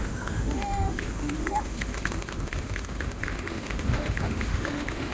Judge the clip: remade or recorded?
remade